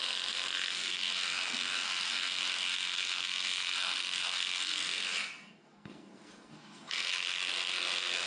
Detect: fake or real fake